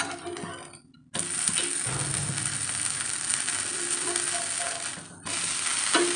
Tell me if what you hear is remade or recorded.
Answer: recorded